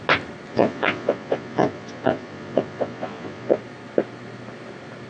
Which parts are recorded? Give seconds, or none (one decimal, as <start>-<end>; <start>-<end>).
0.0-0.5; 3.6-5.1